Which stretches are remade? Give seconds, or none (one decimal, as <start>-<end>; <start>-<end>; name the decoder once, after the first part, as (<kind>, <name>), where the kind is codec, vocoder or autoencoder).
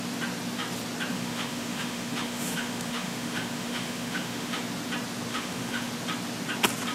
1.1-4.6 (autoencoder, DAC-VAE); 5.3-5.9